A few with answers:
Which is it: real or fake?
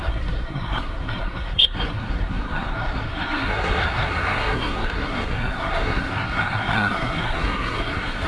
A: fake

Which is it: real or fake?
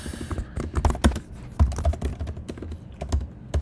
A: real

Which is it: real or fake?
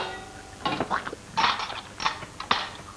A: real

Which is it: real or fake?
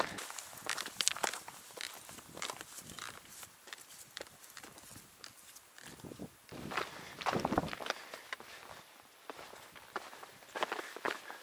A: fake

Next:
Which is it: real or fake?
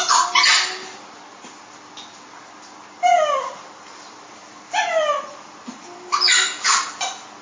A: real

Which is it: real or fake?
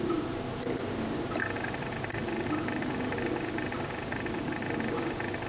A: real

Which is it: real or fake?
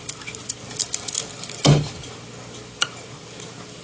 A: real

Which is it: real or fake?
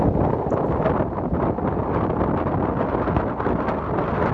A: real